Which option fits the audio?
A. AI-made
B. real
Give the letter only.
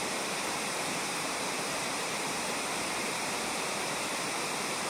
A